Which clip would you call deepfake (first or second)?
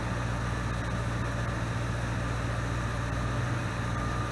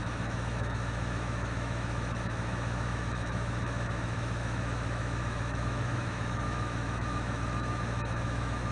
second